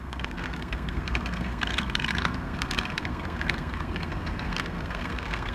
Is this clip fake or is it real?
fake